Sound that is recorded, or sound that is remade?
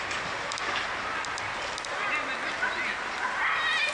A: recorded